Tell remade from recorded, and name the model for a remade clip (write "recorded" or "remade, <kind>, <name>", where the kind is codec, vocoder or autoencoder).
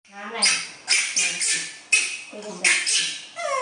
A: recorded